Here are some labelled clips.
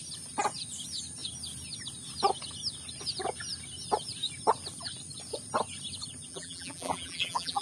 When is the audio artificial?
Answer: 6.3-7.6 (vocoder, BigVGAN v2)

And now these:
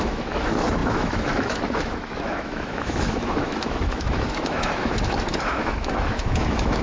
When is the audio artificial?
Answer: 0.0-6.8 (autoencoder, DAC-VAE)

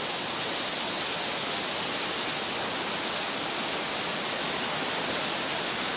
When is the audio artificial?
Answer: none